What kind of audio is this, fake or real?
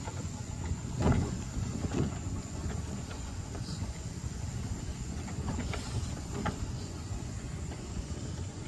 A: fake